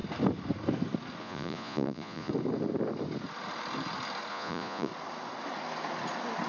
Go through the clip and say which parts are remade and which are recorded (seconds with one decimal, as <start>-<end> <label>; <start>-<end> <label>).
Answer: 0.0-1.2 recorded; 1.2-2.3 remade; 2.3-4.3 recorded; 4.3-4.9 remade; 4.9-6.5 recorded